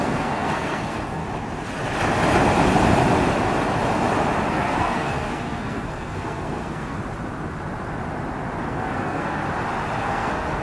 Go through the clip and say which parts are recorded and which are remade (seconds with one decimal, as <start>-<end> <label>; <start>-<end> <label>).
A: 0.0-1.2 remade; 1.2-4.5 recorded; 4.5-7.0 remade; 7.0-8.6 recorded; 8.6-9.4 remade; 9.4-10.0 recorded; 10.0-10.6 remade